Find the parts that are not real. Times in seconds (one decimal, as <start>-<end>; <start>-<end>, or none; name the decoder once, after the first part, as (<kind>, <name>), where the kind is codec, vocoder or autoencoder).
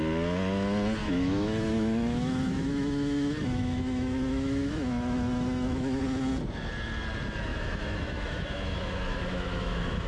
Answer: 1.0-6.0 (autoencoder, DAC-VAE); 7.5-10.1